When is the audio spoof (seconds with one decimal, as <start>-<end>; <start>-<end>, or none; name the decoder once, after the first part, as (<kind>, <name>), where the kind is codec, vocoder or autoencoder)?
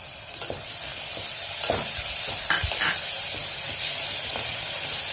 0.0-5.1 (vocoder, BigVGAN v2)